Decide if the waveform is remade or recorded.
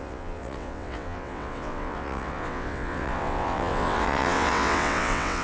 remade